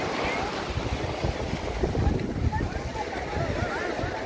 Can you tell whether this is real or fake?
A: real